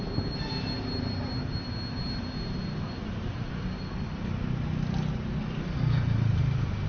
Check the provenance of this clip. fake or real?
real